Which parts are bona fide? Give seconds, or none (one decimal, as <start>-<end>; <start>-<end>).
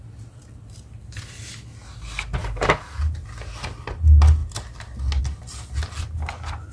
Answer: 0.0-2.4; 3.0-6.7